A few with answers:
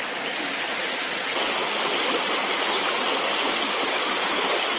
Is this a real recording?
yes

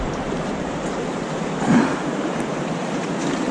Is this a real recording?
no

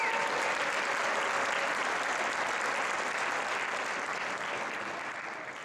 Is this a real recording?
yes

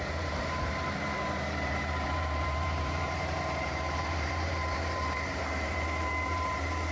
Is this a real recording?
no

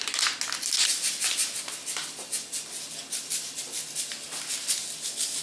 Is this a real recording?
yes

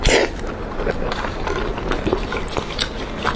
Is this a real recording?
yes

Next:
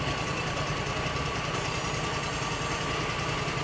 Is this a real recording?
no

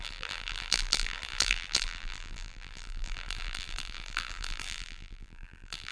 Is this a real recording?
no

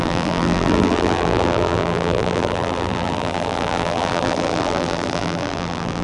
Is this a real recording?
no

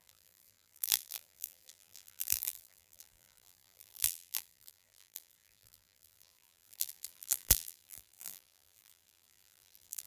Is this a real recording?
no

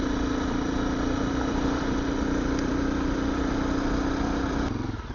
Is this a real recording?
no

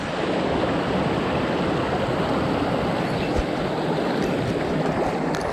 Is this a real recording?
yes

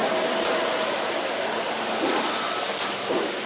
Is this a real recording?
yes